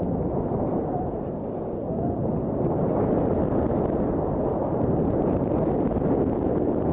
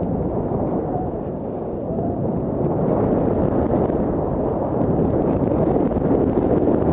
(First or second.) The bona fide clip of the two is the first